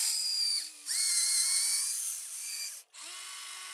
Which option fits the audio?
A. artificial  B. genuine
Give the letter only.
B